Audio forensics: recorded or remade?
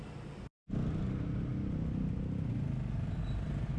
recorded